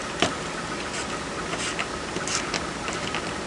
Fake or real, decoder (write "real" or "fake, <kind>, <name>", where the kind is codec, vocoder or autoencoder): real